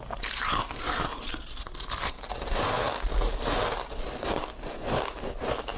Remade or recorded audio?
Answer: recorded